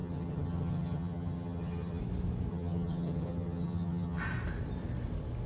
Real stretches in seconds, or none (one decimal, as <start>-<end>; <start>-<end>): 2.0-2.5; 4.2-5.5

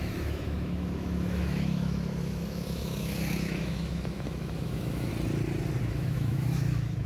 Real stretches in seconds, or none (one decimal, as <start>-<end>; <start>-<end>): 5.1-5.8

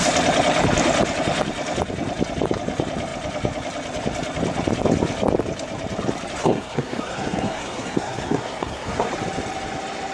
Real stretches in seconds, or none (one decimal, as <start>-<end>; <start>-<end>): 0.0-6.4; 9.1-10.1

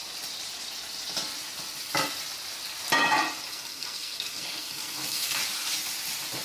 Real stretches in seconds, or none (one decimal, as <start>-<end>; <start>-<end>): 0.0-3.5; 5.4-6.4

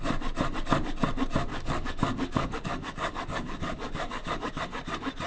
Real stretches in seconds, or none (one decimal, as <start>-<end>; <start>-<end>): 0.0-1.5; 4.5-5.3